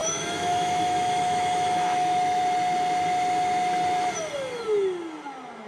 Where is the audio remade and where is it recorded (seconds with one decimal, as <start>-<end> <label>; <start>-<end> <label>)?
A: 0.0-2.4 remade; 2.4-5.7 recorded